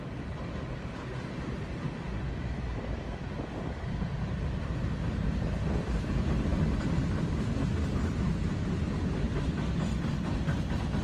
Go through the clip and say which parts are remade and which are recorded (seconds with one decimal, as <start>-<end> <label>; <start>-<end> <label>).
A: 0.0-11.0 recorded